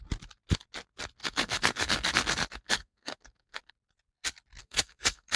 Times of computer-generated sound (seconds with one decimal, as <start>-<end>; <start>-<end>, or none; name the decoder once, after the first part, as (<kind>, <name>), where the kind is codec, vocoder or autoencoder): 1.2-3.7 (codec, SNAC); 4.6-5.4